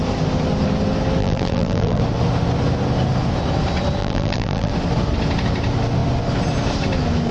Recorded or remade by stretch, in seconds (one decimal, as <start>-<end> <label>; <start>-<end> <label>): 0.0-1.2 recorded; 1.2-2.0 remade; 2.0-4.0 recorded; 4.0-4.7 remade; 4.7-7.3 recorded